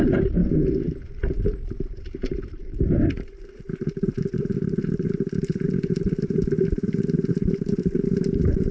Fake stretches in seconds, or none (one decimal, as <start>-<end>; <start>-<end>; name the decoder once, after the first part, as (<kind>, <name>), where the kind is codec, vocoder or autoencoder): 0.0-8.7 (vocoder, BigVGAN v2)